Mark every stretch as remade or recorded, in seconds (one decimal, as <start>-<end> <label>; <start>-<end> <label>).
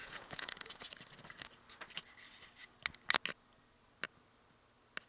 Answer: 0.0-0.7 remade; 0.7-5.1 recorded